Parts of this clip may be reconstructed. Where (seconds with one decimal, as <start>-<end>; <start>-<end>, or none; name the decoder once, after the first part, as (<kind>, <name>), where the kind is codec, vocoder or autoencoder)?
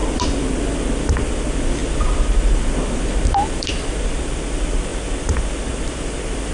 0.0-6.5 (vocoder, BigVGAN v2)